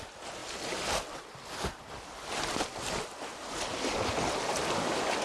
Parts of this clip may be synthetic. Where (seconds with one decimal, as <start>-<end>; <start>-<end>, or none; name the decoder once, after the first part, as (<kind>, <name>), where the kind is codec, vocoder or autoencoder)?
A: none